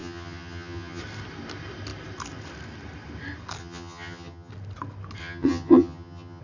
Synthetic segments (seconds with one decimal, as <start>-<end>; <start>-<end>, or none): 0.0-1.0; 3.6-4.5; 5.2-6.4

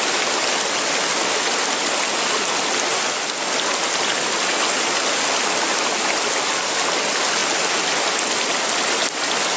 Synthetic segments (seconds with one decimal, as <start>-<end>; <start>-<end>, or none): none

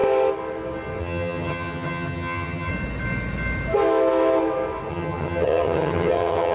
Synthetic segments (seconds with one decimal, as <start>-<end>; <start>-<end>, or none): 1.0-2.7; 4.9-6.5

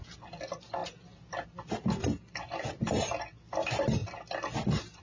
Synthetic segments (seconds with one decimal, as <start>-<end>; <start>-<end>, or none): none